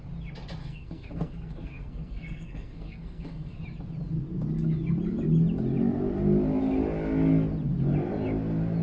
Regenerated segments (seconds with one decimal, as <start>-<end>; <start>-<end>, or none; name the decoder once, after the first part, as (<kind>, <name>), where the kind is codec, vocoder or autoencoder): 0.6-3.6 (codec, SNAC)